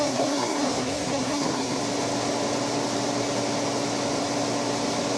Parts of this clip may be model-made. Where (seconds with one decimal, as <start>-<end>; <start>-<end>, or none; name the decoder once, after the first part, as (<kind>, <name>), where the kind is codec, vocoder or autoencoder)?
0.0-1.8 (codec, SNAC)